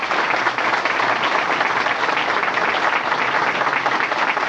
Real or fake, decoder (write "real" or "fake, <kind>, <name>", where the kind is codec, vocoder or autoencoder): real